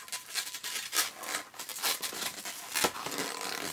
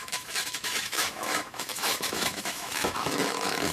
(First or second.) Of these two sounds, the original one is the first